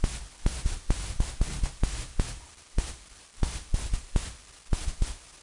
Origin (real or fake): real